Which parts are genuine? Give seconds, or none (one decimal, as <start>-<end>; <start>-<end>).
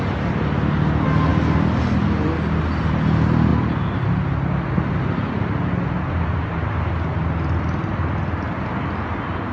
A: 0.0-9.5